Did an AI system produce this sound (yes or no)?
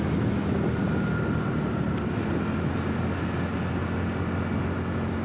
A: no